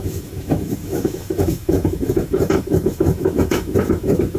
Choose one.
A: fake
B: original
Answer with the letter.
A